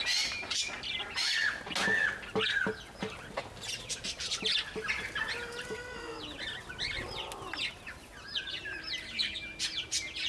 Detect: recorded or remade recorded